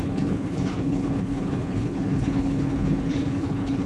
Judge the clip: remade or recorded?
remade